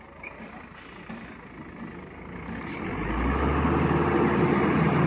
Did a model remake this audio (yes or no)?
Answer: no